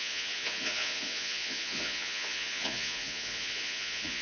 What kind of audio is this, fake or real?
fake